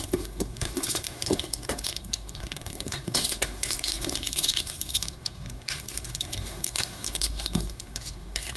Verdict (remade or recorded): remade